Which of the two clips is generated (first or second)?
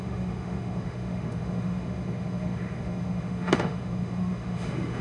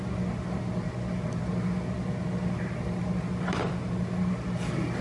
first